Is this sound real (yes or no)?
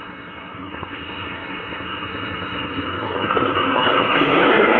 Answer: no